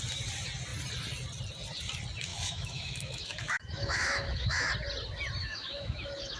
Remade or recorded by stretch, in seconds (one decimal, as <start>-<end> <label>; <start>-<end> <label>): 0.0-2.3 recorded; 2.3-4.7 remade; 4.7-5.4 recorded; 5.4-6.4 remade